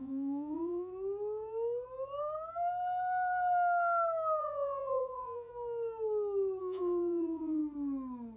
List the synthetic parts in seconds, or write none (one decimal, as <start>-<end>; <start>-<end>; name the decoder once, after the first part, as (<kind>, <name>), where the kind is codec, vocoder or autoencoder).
0.0-0.9 (vocoder, Vocos); 4.4-5.5; 6.6-7.6